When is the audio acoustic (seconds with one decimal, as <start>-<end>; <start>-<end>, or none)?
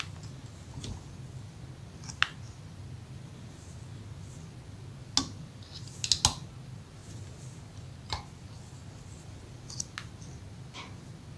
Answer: 0.0-11.4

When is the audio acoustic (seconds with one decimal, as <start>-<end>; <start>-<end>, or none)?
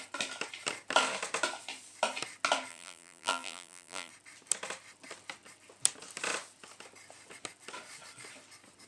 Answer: 0.0-2.7; 4.1-8.9